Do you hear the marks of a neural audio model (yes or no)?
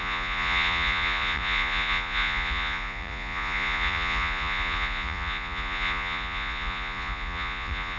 yes